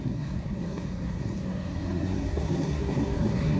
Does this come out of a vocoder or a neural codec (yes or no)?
yes